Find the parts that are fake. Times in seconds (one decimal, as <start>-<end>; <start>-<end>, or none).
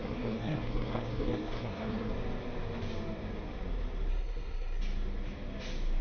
0.0-2.1; 4.1-4.8